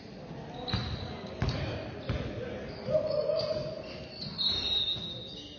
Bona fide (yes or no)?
yes